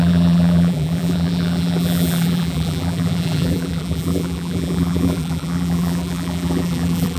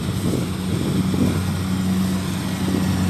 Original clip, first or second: second